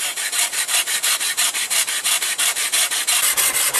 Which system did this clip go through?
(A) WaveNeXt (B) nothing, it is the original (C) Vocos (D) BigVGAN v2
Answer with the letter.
D